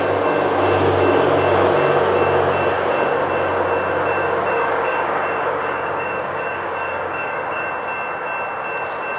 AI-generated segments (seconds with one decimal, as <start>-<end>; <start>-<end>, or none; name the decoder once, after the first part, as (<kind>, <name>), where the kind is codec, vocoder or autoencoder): 4.2-7.7 (codec, DAC)